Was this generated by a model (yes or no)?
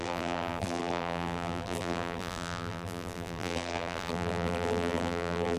yes